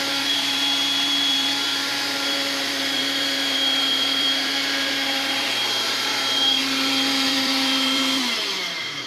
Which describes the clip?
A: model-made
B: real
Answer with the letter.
A